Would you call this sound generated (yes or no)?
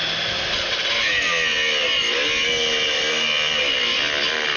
no